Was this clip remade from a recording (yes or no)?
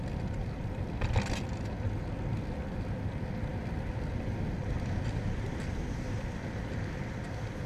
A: no